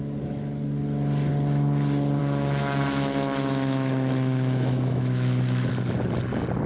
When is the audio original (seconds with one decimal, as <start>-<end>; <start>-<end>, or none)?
0.0-2.2; 5.7-6.7

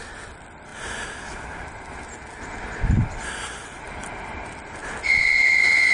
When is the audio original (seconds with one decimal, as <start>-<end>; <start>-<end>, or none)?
0.0-5.9

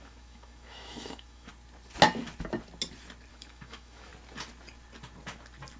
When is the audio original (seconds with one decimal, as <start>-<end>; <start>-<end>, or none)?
1.5-3.3; 4.1-5.8

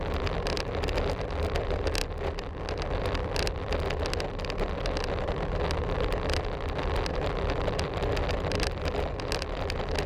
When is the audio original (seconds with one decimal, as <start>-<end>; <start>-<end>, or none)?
0.0-10.1

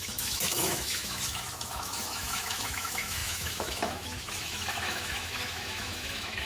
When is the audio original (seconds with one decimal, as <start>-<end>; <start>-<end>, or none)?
none

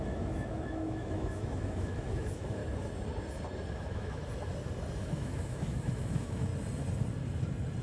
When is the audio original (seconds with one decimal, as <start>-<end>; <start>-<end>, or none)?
2.6-3.7; 4.2-5.0; 6.5-7.8